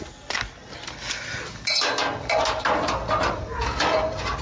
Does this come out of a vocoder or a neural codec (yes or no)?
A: no